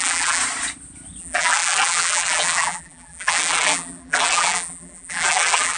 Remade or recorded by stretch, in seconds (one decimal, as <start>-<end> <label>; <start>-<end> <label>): 0.0-0.4 remade; 0.4-1.2 recorded; 1.2-5.8 remade